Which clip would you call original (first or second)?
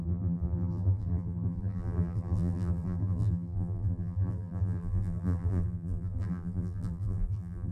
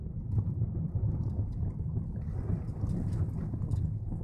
second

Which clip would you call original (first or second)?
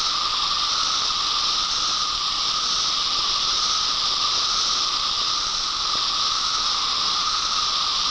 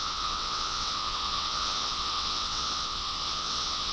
first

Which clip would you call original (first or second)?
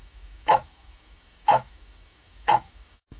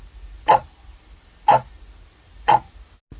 second